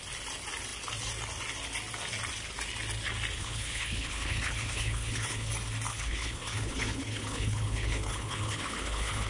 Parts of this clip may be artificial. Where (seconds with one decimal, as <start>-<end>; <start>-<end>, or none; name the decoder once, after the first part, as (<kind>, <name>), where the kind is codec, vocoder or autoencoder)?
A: 3.4-5.5 (codec, HILCodec); 5.9-9.3